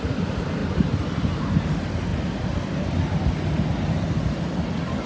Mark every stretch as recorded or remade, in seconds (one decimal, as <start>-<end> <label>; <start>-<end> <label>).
0.0-5.1 recorded